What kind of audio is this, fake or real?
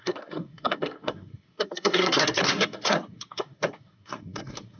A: fake